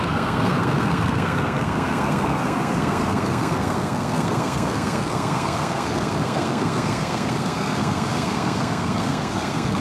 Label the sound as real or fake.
fake